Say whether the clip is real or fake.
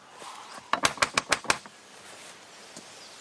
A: real